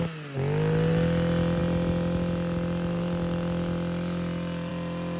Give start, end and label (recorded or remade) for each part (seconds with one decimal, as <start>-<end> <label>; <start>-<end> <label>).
0.0-5.2 recorded